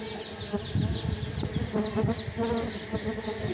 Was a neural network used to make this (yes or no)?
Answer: no